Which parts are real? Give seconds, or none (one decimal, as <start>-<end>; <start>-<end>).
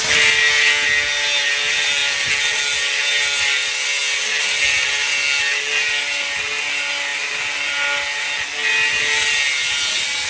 0.0-10.3